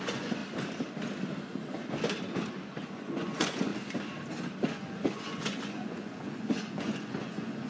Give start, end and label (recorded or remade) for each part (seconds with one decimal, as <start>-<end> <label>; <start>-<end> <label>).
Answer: 0.0-0.4 remade; 0.4-2.7 recorded; 2.7-3.7 remade; 3.7-4.6 recorded; 4.6-7.7 remade

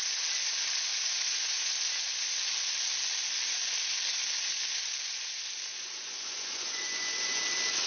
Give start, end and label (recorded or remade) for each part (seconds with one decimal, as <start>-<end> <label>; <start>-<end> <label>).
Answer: 0.0-0.9 recorded; 0.9-1.7 remade; 1.7-5.7 recorded; 5.7-7.4 remade; 7.4-7.9 recorded